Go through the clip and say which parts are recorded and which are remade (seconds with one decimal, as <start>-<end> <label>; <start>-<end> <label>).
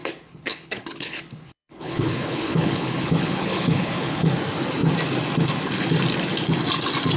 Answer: 0.0-4.3 remade; 4.3-7.2 recorded